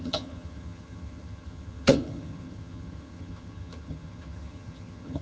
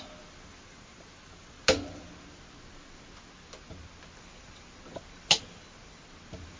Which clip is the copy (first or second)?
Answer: first